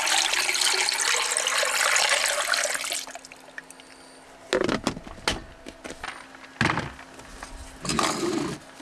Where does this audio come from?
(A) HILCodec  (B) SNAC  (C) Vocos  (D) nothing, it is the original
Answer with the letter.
D